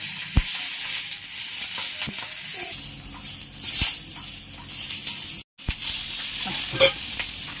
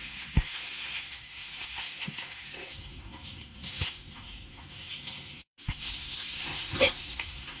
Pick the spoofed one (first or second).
second